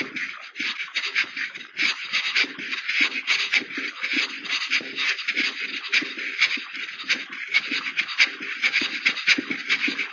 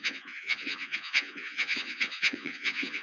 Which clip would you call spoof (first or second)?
second